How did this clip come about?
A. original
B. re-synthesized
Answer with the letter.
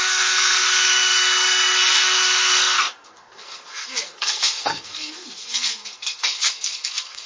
B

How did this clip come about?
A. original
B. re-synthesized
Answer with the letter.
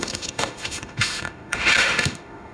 B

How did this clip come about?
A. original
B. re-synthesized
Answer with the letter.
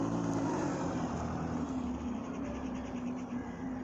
B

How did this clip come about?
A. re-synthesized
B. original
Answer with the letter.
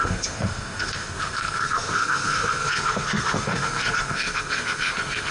A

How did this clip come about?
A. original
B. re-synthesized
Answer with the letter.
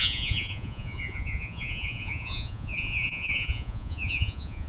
B